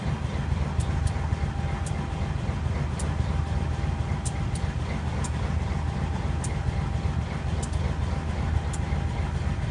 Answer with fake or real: real